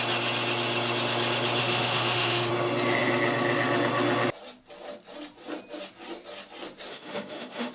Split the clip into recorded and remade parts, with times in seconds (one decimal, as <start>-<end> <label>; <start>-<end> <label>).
0.0-1.6 recorded; 1.6-2.5 remade; 2.5-6.9 recorded; 6.9-7.7 remade